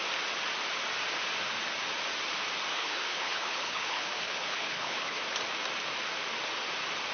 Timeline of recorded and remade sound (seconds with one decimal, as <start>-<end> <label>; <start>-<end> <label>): 0.0-2.7 recorded; 2.7-5.2 remade; 5.2-7.1 recorded

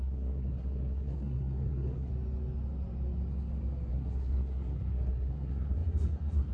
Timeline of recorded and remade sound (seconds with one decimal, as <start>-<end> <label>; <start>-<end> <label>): 0.0-2.1 remade; 2.1-3.9 recorded; 3.9-6.5 remade

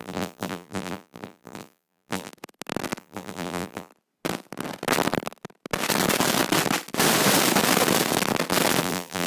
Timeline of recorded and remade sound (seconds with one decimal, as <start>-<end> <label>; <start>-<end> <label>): 0.0-2.3 remade; 2.3-3.0 recorded; 3.0-3.9 remade; 3.9-8.8 recorded; 8.8-9.3 remade

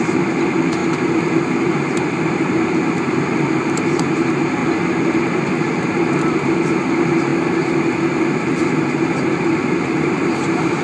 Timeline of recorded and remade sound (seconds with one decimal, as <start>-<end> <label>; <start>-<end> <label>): 0.0-4.6 remade; 4.6-5.6 recorded; 5.6-7.3 remade; 7.3-8.2 recorded; 8.2-10.8 remade

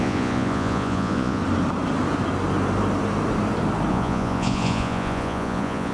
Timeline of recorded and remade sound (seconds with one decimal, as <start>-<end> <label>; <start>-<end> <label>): 0.0-1.4 remade; 1.4-3.9 recorded; 3.9-5.9 remade

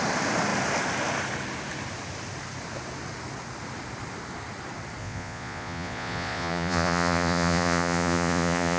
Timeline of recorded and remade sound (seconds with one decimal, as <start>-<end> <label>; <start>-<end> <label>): 0.0-5.0 recorded; 5.0-8.8 remade

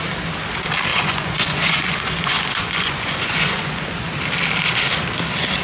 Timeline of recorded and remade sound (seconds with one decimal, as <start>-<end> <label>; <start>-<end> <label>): 0.0-0.9 recorded; 0.9-4.1 remade; 4.1-5.6 recorded

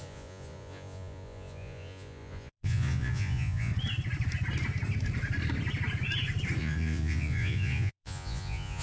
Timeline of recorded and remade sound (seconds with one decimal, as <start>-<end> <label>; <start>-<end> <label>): 0.0-3.7 remade; 3.7-6.6 recorded; 6.6-8.8 remade